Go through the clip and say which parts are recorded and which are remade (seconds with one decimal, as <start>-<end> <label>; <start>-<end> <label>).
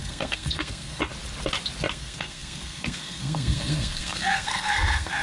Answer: 0.0-1.0 remade; 1.0-1.9 recorded; 1.9-5.2 remade